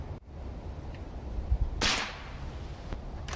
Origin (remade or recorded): recorded